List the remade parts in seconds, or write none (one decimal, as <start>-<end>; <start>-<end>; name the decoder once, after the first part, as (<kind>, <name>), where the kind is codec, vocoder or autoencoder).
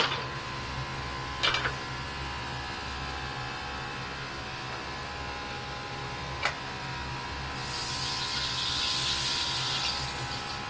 none